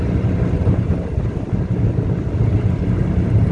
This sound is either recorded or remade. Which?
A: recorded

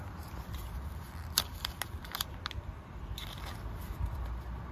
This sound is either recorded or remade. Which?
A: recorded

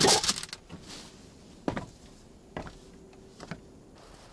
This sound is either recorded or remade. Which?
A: recorded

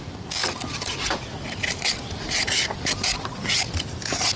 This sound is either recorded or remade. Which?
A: recorded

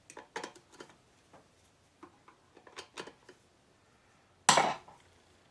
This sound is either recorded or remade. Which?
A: recorded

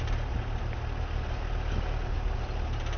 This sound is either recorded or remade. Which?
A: recorded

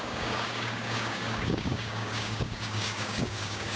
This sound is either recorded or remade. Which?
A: remade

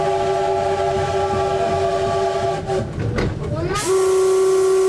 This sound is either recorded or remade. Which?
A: recorded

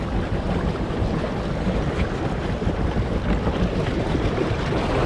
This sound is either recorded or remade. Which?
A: recorded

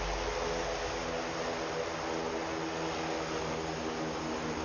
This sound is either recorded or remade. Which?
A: recorded